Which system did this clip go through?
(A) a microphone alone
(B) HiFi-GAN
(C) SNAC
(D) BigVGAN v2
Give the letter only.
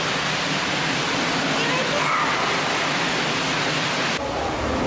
A